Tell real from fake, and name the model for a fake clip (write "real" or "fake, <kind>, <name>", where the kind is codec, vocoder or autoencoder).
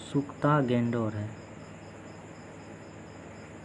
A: real